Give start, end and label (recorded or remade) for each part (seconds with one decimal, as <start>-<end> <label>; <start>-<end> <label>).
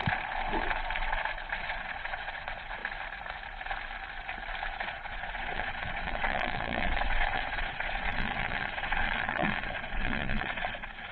0.0-1.6 recorded; 1.6-2.8 remade; 2.8-4.8 recorded; 4.8-11.1 remade